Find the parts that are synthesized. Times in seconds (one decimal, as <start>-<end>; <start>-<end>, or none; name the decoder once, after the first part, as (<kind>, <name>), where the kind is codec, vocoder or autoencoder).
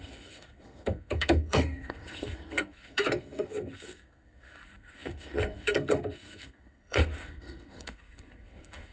0.0-8.9 (codec, SNAC)